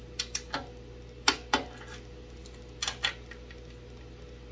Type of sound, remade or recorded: recorded